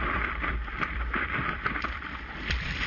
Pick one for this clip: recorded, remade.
remade